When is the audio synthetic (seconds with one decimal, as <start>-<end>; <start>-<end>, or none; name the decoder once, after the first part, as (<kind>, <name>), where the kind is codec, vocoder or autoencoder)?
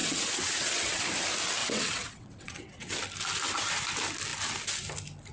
0.0-1.0 (vocoder, WaveNeXt); 1.6-2.9